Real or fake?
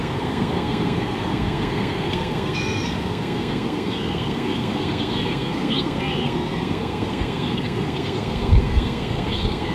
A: fake